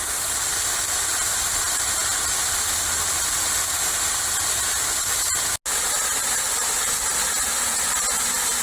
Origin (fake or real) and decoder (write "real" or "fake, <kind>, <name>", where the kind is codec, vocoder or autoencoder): real